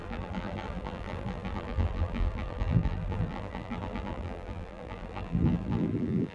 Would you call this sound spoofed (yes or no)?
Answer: yes